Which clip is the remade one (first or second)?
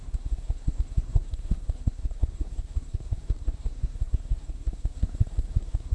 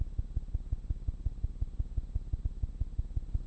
first